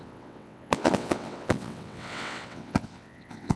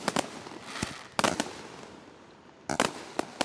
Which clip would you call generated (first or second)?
first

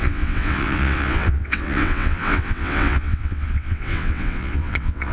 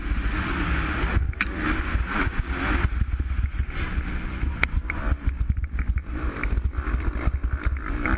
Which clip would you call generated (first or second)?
first